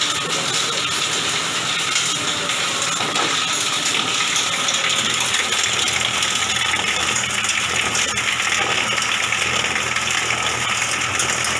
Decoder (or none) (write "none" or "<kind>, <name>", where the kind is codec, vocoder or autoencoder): none